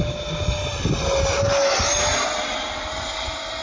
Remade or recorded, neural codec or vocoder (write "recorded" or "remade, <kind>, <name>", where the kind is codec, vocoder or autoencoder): recorded